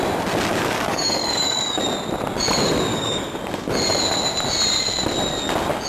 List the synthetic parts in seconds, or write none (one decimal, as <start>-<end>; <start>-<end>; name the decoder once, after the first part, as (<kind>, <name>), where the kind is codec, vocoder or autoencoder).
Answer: 0.5-1.8 (codec, DAC); 2.9-3.4